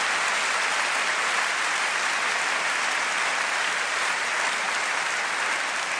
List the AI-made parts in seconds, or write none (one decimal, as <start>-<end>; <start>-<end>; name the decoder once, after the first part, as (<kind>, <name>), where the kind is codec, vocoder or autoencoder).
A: 1.1-4.7 (vocoder, BigVGAN v2)